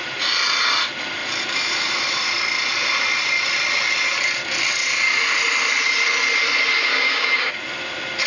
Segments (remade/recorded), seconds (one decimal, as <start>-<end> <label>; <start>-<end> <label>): 0.0-6.9 recorded; 6.9-7.5 remade; 7.5-8.3 recorded